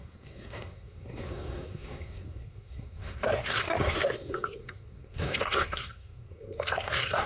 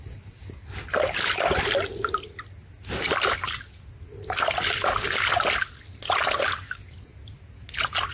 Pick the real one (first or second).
second